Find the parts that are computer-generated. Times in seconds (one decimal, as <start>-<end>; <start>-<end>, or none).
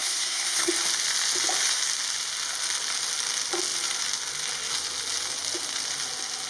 0.0-0.7